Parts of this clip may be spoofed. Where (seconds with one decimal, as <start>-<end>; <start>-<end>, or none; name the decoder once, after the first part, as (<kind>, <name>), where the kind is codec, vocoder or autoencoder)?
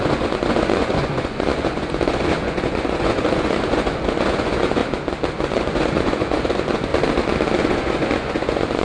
0.0-4.8 (vocoder, Vocos); 5.4-6.9; 7.6-8.8